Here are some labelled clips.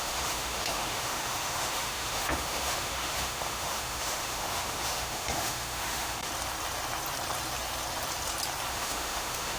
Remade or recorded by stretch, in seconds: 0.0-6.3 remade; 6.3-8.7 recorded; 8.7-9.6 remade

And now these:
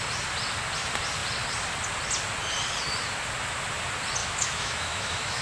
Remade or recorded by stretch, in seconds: 0.0-4.2 recorded; 4.2-5.4 remade

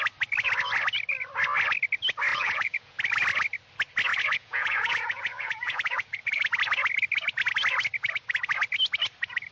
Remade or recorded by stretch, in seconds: 0.0-2.3 recorded; 2.3-3.0 remade; 3.0-4.1 recorded; 4.1-6.4 remade; 6.4-9.5 recorded

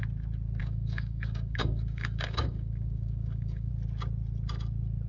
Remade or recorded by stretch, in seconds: 0.0-0.6 recorded; 0.6-3.7 remade; 3.7-5.1 recorded

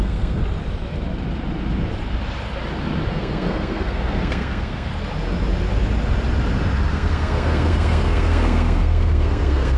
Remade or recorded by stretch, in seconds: 0.0-0.4 remade; 0.4-3.1 recorded; 3.1-4.9 remade; 4.9-6.9 recorded; 6.9-9.8 remade

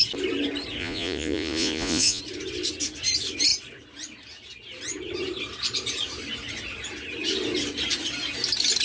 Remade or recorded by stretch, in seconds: 0.0-0.8 recorded; 0.8-2.2 remade; 2.2-8.8 recorded

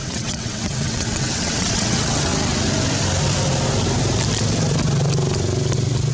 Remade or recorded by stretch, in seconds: 0.0-2.3 remade; 2.3-6.1 recorded

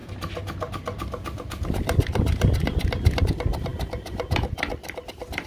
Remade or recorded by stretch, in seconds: 0.0-5.5 recorded